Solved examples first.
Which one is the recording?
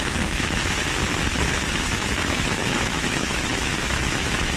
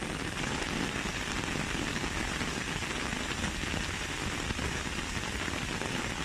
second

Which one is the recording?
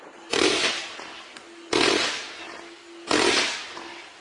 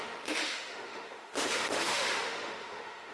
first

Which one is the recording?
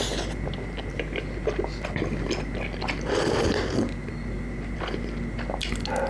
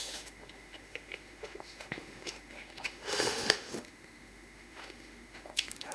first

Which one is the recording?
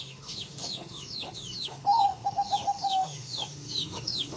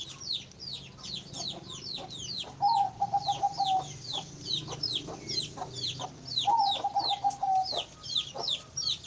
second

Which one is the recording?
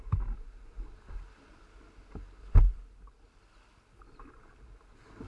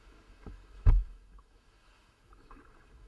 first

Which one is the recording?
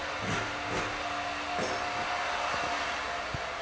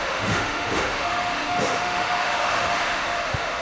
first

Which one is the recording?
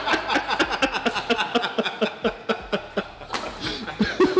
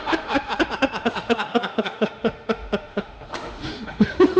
first